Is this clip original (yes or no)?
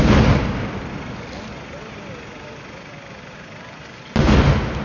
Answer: yes